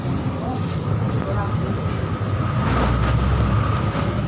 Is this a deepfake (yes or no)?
no